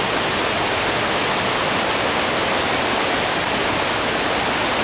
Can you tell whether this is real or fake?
real